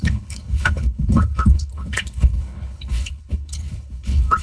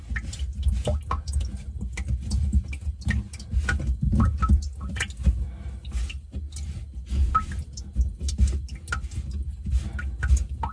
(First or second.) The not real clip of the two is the first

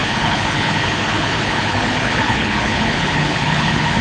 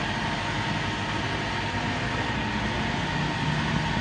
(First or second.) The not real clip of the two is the first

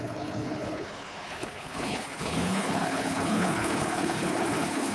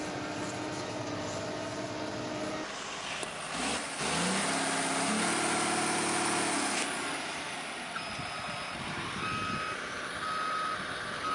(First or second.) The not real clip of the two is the first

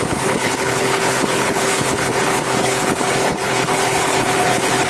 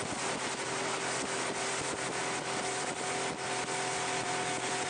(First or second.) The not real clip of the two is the first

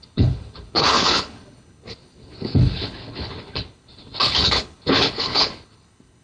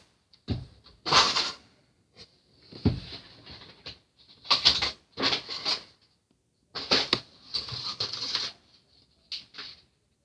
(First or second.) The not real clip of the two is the first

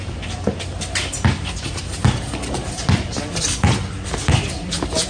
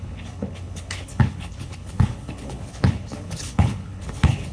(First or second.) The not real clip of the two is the second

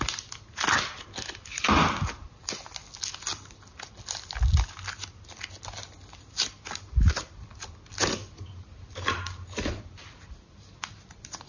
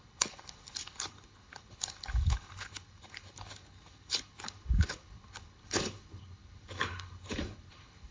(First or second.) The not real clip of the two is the second